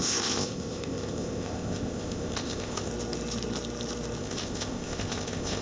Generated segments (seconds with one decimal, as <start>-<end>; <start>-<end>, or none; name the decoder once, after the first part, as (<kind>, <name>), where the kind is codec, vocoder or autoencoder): 0.0-2.9 (codec, ZipCodec); 4.2-5.6